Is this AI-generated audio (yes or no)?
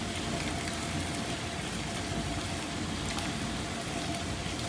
no